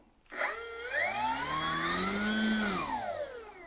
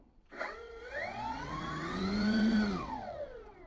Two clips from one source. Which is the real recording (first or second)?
first